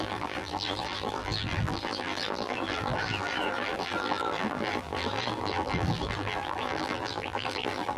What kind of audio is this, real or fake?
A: fake